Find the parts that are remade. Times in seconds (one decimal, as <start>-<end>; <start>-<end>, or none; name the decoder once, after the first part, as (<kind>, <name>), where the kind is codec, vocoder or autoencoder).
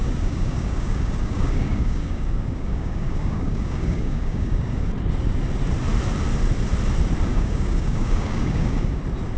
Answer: 0.0-4.9 (codec, DAC); 7.3-9.0